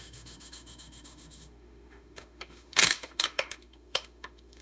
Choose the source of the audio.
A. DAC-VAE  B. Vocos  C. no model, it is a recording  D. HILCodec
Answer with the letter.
A